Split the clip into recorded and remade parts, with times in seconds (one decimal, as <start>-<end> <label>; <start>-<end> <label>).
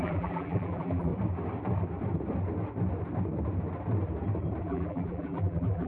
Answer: 0.0-1.1 remade; 1.1-4.6 recorded; 4.6-5.9 remade